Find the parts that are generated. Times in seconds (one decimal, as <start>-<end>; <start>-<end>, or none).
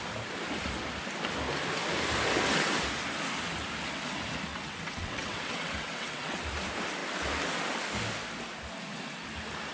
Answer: 4.5-6.4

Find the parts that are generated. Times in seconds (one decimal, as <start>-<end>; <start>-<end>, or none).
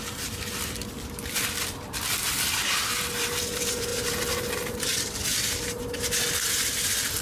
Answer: 0.0-7.2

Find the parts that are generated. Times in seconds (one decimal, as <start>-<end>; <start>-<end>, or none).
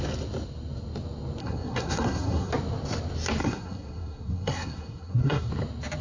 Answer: 1.4-2.5; 3.4-5.5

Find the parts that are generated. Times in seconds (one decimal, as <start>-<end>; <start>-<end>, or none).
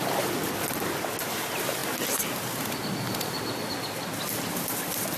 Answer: 0.0-1.8